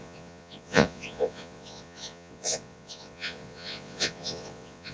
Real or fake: fake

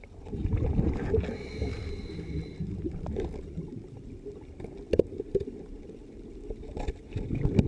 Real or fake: real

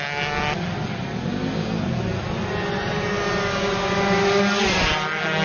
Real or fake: real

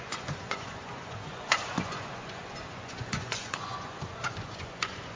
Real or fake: fake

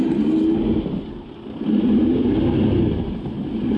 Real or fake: real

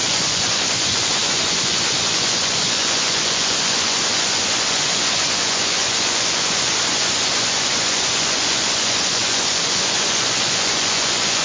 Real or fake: fake